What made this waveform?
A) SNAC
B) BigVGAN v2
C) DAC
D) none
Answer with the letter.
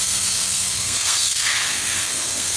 A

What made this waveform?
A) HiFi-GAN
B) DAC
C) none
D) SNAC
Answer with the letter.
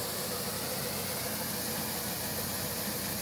C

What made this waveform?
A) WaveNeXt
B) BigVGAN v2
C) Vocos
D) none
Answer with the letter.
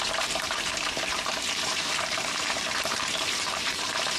B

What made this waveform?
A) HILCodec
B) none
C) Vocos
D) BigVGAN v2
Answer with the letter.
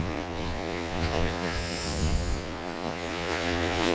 C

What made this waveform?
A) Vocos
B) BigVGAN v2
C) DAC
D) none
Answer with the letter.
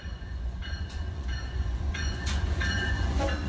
A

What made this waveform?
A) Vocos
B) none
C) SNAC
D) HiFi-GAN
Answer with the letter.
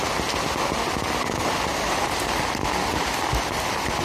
B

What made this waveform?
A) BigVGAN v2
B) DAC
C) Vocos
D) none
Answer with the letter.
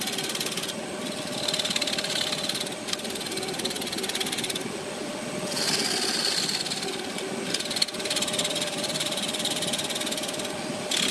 D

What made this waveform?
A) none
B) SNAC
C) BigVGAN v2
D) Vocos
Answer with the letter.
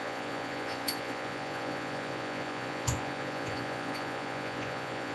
D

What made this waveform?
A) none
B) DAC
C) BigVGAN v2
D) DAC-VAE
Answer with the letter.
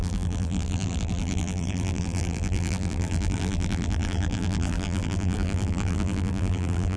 C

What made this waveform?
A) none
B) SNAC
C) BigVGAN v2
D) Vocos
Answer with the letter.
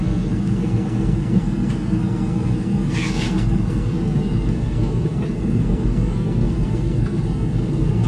B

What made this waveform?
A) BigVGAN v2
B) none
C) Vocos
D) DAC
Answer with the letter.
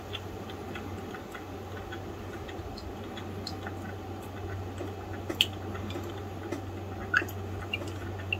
B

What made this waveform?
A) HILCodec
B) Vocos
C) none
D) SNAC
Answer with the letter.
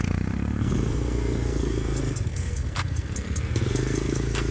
D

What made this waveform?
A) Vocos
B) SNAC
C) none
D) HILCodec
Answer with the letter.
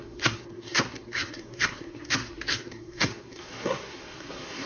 B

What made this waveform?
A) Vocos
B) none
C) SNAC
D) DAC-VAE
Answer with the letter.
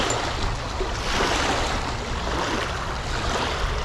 B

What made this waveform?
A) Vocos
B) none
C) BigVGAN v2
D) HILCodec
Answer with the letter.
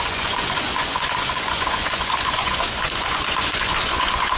A